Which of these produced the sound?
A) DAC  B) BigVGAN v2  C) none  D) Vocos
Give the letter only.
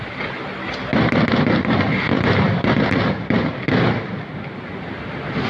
C